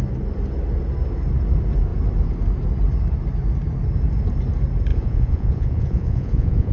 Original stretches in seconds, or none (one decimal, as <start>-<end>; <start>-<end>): 0.0-4.9